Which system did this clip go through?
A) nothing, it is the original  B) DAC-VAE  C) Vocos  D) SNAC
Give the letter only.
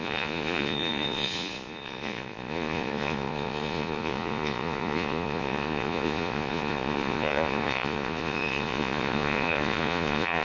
C